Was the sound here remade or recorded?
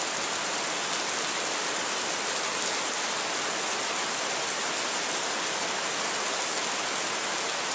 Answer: recorded